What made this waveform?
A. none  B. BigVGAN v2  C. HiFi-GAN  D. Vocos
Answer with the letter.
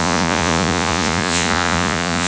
D